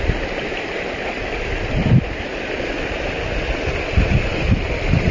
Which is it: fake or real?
real